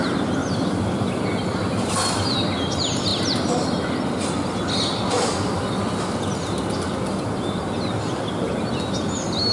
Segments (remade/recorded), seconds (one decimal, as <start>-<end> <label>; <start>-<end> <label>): 0.0-0.4 recorded; 0.4-2.4 remade; 2.4-9.5 recorded